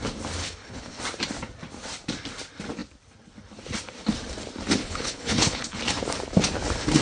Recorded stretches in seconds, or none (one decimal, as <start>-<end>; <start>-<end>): 0.0-0.4; 1.0-4.8; 5.8-7.0